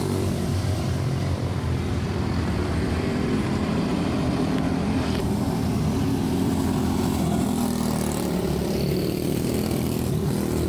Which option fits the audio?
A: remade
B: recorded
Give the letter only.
A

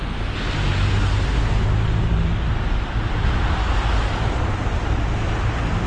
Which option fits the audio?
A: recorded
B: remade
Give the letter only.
A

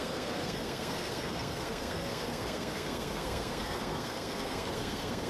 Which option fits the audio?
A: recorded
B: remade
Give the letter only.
B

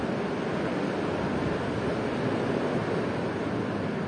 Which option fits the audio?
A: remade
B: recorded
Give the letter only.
B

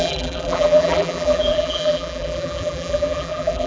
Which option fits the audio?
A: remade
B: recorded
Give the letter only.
A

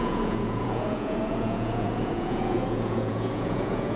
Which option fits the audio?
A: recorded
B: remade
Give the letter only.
B